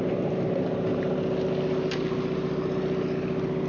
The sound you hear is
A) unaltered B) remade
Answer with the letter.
A